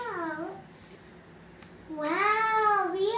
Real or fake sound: real